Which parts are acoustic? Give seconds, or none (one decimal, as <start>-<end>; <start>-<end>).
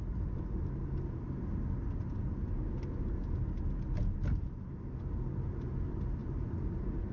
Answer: 0.0-6.2